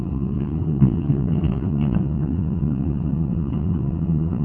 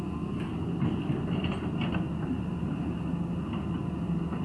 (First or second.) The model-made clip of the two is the first